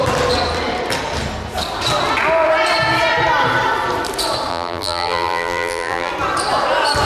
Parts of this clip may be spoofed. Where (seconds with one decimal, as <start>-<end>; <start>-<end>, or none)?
4.5-6.1